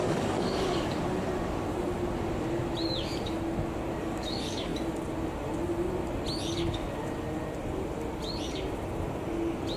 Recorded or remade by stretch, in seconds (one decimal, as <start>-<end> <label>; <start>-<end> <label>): 0.0-1.0 remade; 1.0-4.0 recorded; 4.0-4.7 remade; 4.7-9.8 recorded